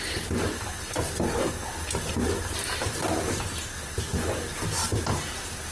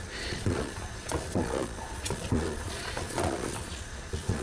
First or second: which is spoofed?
second